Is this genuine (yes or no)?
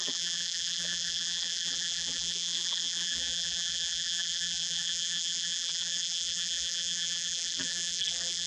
no